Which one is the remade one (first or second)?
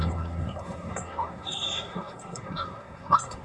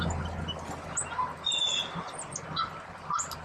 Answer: first